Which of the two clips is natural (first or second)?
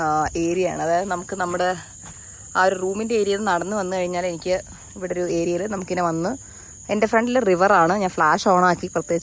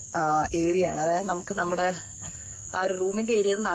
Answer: first